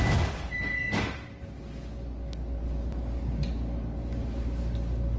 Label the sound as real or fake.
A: real